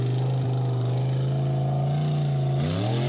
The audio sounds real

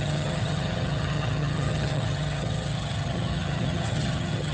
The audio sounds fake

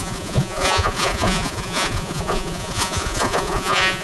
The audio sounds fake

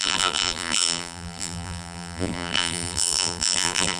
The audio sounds fake